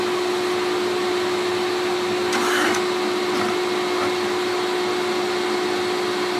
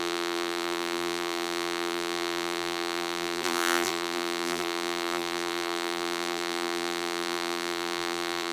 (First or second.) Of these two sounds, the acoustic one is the first